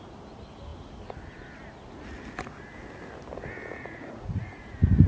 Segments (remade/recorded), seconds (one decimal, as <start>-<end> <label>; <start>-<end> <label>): 0.0-3.6 recorded; 3.6-4.6 remade; 4.6-5.1 recorded